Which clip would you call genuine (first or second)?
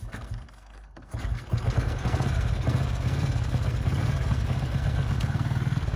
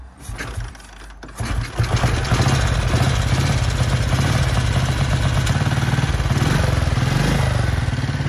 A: second